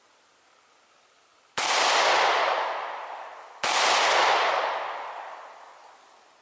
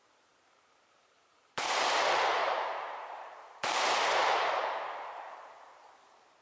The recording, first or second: first